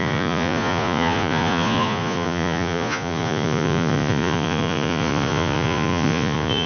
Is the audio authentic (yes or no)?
no